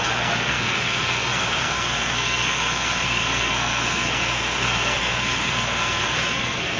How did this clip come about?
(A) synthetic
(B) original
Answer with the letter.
A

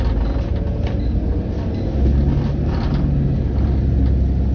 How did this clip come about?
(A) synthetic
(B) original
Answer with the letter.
B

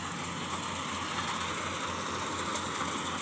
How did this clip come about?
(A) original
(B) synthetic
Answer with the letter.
A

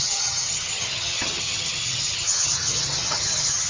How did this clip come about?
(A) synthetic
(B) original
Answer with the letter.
A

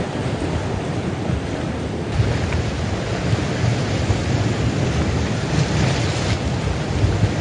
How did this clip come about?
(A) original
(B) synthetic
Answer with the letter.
A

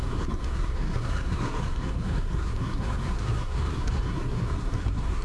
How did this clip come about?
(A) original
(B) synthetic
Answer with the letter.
B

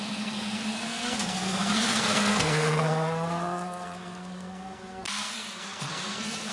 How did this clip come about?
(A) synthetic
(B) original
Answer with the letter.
A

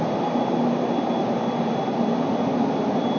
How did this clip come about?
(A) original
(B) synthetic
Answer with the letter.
A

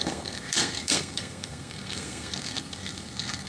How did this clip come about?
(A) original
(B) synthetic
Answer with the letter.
B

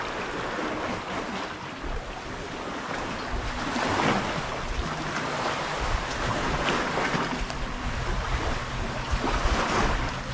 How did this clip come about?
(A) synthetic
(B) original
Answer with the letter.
B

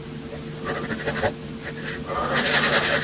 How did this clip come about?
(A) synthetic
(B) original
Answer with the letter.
B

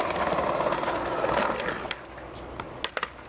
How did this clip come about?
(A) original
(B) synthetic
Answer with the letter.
A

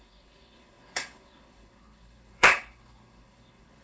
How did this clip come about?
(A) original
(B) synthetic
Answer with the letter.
B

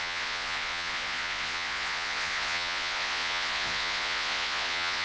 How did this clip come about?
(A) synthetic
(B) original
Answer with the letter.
A